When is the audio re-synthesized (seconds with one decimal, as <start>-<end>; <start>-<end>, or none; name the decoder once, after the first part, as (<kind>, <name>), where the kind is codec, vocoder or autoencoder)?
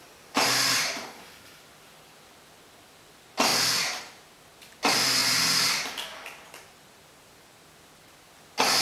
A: none